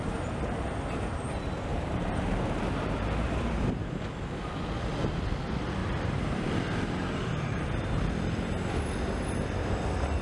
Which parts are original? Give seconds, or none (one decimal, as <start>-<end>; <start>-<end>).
0.0-1.7; 3.7-5.8; 8.1-10.2